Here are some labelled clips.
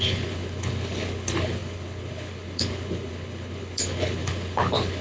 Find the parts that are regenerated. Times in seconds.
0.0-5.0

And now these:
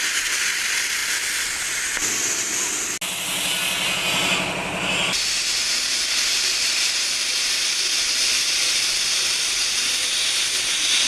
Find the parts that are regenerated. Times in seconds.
none